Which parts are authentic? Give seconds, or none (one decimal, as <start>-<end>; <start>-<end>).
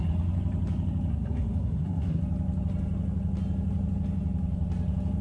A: 0.0-1.1; 2.2-5.2